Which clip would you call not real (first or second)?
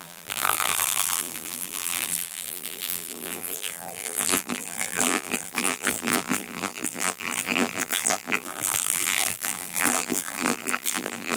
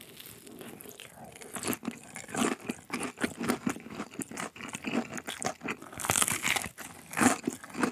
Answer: first